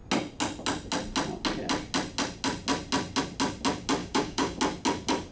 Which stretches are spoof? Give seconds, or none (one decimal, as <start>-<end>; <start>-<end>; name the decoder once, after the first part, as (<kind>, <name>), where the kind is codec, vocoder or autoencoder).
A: 4.0-4.6 (codec, DAC)